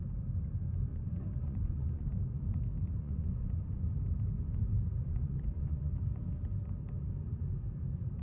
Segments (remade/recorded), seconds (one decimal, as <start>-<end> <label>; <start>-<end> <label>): 0.0-0.9 recorded; 0.9-2.1 remade; 2.1-3.0 recorded; 3.0-3.9 remade; 3.9-5.0 recorded; 5.0-5.9 remade; 5.9-8.2 recorded

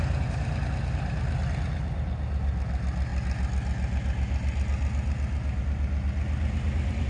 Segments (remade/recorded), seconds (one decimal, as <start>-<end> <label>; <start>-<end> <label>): 0.0-7.1 recorded